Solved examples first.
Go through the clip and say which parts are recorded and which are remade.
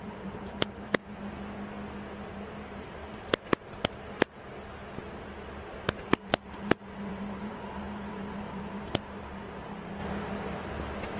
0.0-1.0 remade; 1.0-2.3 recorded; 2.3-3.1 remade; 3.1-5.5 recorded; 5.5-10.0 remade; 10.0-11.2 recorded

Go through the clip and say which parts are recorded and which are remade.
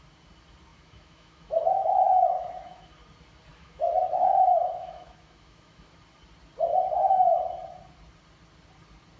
0.0-0.7 recorded; 0.7-2.9 remade; 2.9-3.5 recorded; 3.5-6.0 remade; 6.0-9.2 recorded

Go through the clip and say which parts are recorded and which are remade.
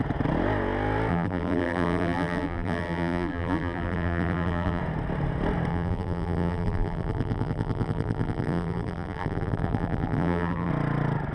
0.0-1.1 recorded; 1.1-4.8 remade; 4.8-5.7 recorded; 5.7-10.7 remade; 10.7-11.3 recorded